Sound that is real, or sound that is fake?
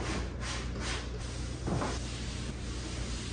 real